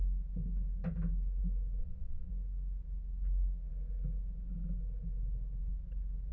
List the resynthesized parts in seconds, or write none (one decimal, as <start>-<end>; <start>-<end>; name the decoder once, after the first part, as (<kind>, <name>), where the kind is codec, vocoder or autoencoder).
1.8-2.3 (vocoder, WaveNeXt)